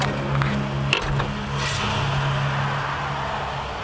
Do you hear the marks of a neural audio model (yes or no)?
no